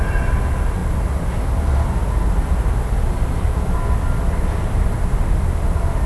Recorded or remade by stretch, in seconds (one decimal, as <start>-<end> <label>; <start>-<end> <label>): 0.0-6.1 recorded